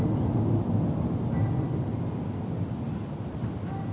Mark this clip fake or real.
real